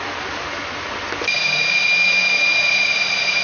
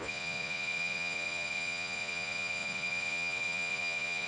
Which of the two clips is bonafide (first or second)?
first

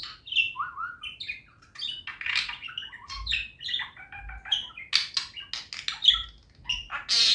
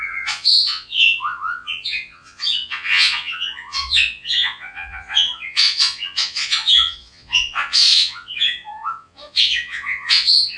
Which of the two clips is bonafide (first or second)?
first